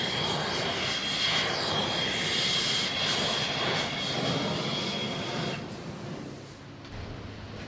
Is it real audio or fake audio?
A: real